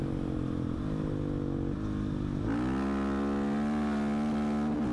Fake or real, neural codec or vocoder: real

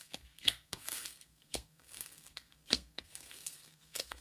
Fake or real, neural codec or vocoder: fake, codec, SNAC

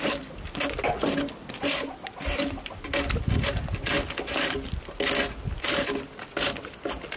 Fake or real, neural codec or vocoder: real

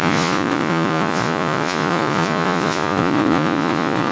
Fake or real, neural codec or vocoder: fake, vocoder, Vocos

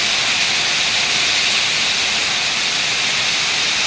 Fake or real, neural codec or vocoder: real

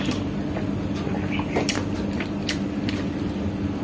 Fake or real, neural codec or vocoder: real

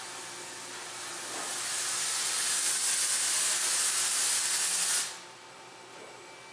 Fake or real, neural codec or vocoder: real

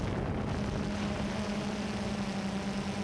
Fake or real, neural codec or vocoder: real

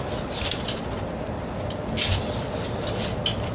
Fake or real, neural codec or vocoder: real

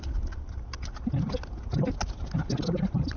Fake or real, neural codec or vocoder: real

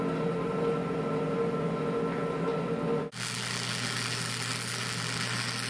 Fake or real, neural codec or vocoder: real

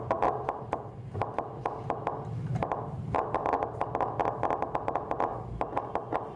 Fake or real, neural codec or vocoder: real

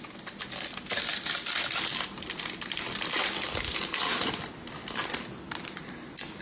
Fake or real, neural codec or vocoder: real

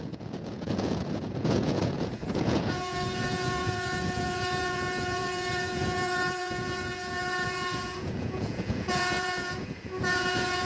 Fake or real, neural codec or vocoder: fake, vocoder, Vocos